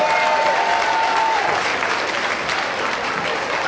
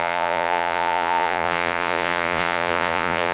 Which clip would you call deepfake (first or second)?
second